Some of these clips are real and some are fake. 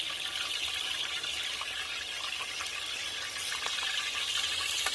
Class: real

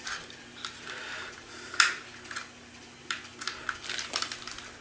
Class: real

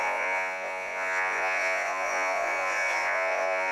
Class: fake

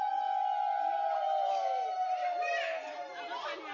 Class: real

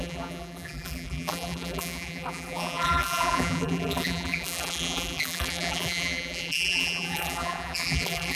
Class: fake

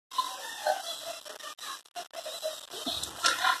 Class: real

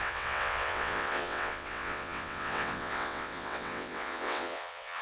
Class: fake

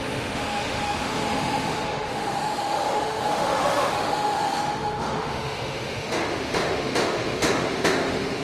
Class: fake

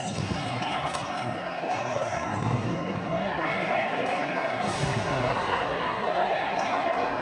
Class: fake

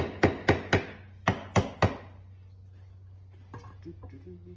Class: real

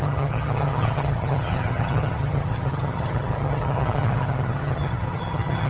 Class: fake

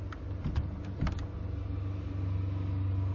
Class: real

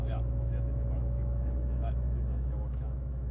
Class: fake